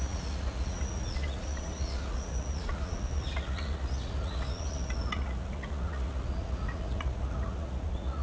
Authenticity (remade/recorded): remade